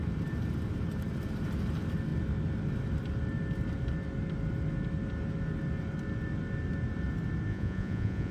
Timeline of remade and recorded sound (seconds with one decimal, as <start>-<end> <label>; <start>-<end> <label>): 0.0-7.5 recorded; 7.5-8.3 remade